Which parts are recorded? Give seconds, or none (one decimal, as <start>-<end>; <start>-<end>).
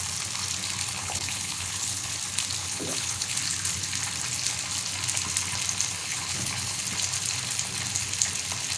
0.0-1.0; 2.1-2.6; 3.4-6.0; 6.8-8.8